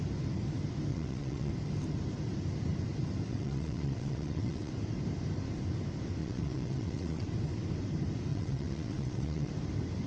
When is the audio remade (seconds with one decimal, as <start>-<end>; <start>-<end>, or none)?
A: 0.9-1.5; 3.3-4.7; 6.2-7.3; 8.3-9.5